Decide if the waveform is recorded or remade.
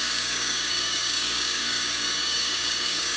remade